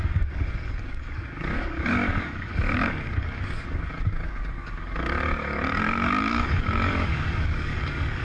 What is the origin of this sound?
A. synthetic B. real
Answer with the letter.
A